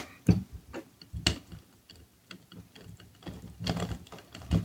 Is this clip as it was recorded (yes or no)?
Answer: yes